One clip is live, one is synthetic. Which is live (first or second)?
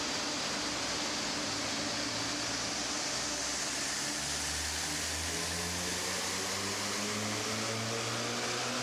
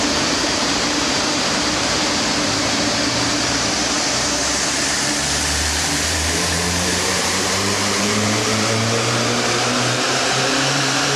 first